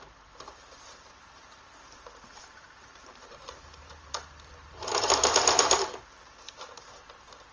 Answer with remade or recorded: remade